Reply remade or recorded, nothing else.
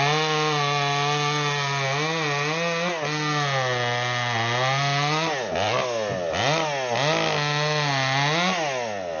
recorded